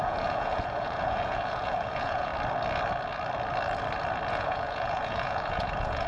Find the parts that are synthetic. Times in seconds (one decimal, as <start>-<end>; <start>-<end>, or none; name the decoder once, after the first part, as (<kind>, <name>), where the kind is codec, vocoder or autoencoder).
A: 0.0-2.3 (vocoder, Vocos); 4.3-6.1